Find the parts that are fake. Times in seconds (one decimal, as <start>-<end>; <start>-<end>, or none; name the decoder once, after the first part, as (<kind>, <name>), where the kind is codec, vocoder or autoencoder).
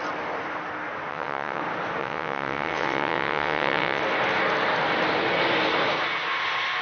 1.1-1.6 (vocoder, WaveNeXt); 2.0-4.0